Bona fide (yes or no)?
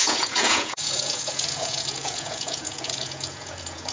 no